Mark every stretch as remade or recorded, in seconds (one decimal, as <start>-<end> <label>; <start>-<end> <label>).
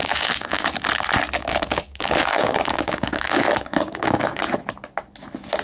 0.0-0.7 remade; 0.7-1.4 recorded; 1.4-4.4 remade; 4.4-5.6 recorded